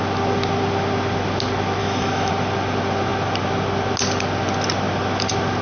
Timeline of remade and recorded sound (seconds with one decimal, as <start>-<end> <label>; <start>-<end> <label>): 0.0-1.8 recorded; 1.8-2.3 remade; 2.3-5.6 recorded